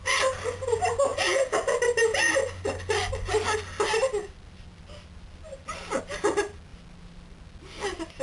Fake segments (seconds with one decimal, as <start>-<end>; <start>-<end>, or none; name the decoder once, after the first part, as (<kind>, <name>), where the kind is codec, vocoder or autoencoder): none